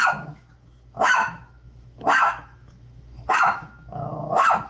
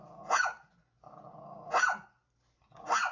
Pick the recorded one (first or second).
second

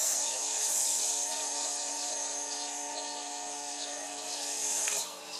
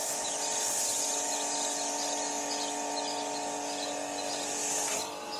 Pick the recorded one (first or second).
second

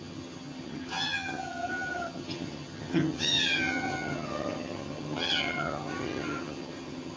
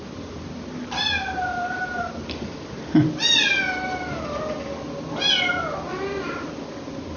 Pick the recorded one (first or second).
second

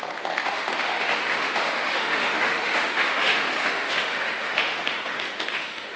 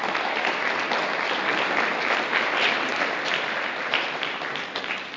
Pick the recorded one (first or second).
second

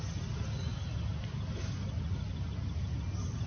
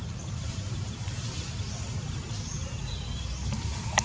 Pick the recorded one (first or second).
first